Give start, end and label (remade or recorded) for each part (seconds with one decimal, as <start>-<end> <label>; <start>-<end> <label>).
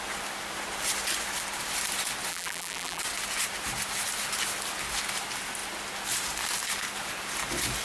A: 0.0-2.3 recorded; 2.3-3.0 remade; 3.0-7.8 recorded